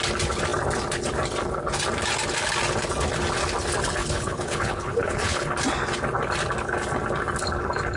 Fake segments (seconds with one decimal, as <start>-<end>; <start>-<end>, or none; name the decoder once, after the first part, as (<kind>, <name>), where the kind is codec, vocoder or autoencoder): 4.0-5.5 (codec, HILCodec)